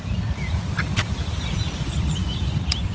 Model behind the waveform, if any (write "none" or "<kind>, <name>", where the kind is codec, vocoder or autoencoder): none